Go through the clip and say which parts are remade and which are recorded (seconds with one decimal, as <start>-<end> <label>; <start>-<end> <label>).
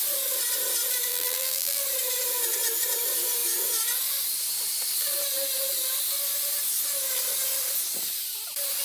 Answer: 0.0-1.1 recorded; 1.1-1.8 remade; 1.8-8.8 recorded